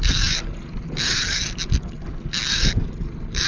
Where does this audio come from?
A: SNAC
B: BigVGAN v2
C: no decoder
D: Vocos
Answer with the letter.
C